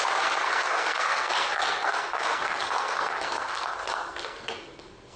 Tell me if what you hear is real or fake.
fake